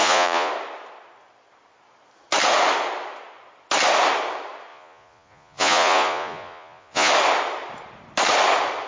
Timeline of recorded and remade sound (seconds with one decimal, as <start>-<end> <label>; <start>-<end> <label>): 0.0-0.5 remade; 0.5-4.7 recorded; 4.7-7.1 remade; 7.1-8.9 recorded